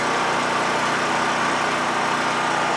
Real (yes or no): yes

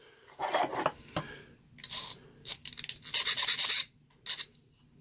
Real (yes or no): yes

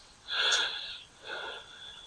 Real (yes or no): no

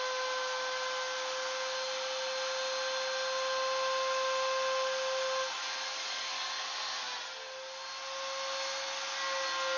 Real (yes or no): yes